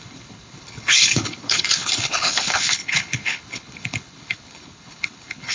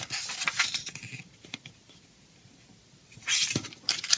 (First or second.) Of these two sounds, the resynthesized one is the first